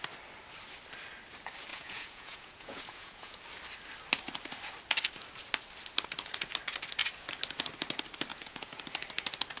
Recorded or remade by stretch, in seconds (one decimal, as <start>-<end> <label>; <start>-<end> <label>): 0.0-1.7 recorded; 1.7-3.4 remade; 3.4-8.3 recorded; 8.3-8.8 remade; 8.8-9.6 recorded